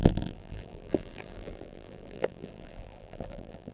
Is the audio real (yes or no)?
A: no